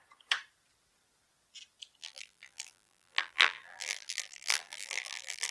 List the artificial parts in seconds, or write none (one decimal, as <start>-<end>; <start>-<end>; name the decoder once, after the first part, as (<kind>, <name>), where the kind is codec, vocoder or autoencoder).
2.0-5.5 (vocoder, BigVGAN v2)